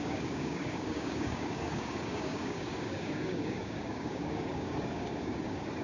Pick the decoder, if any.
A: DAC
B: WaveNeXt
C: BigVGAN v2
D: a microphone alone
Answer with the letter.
A